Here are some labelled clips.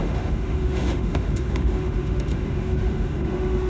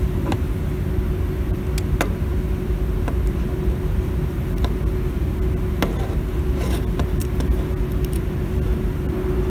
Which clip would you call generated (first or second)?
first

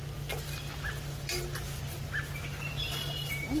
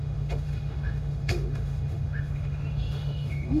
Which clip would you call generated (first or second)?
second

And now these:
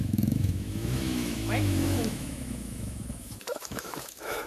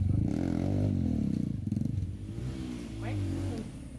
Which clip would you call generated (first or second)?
first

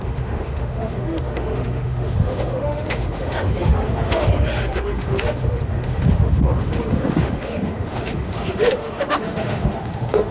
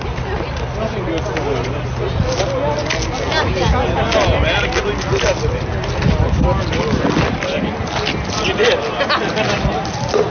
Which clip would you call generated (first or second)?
first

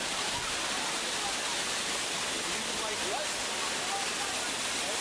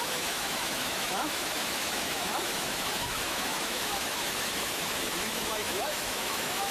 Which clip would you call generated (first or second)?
second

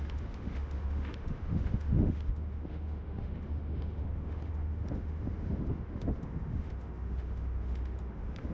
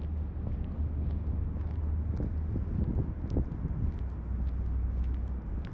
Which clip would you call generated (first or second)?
first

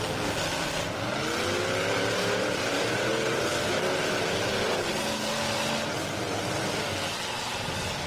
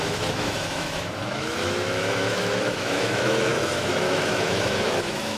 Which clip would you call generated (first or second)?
second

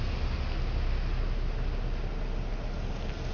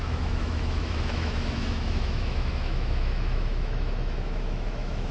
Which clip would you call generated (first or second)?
second